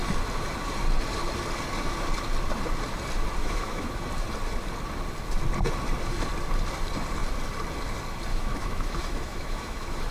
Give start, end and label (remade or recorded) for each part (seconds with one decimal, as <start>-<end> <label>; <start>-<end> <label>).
0.0-3.4 recorded; 3.4-4.0 remade; 4.0-8.3 recorded; 8.3-10.1 remade